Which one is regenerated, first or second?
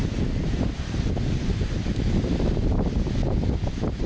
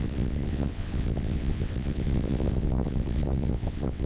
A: second